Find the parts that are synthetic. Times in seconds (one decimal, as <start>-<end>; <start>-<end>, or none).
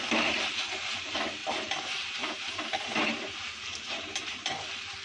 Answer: 1.4-4.4